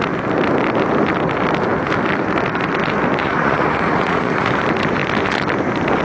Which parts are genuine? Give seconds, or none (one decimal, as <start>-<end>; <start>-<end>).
0.0-3.2; 4.5-6.0